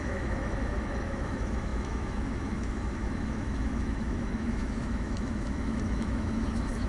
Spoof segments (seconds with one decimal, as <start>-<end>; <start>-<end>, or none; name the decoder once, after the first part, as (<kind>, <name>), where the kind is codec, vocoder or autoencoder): 0.0-6.9 (autoencoder, DAC-VAE)